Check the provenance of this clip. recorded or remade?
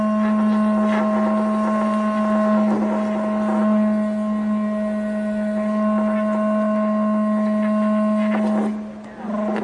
recorded